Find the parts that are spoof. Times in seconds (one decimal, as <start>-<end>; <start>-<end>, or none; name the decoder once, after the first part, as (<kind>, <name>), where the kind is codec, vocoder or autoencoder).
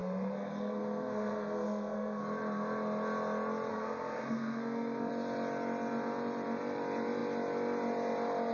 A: 0.0-2.2 (codec, SNAC); 3.7-5.1